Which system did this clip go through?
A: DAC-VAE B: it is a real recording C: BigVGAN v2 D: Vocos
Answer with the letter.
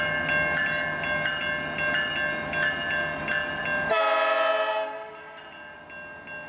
B